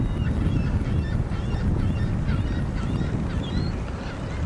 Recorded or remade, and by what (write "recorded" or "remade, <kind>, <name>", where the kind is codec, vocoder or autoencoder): recorded